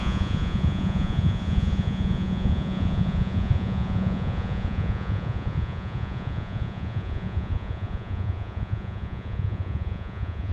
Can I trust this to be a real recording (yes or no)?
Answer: no